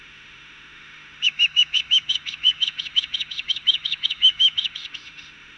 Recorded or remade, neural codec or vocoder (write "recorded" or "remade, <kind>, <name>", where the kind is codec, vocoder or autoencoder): remade, autoencoder, DAC-VAE